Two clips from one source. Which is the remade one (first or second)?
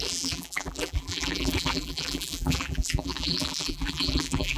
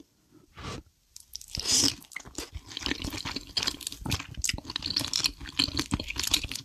first